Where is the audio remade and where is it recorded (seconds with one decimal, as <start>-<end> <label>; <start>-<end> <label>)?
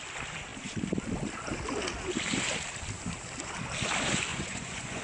0.0-4.3 recorded; 4.3-5.0 remade